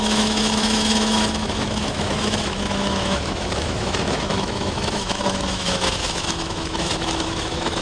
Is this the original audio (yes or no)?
no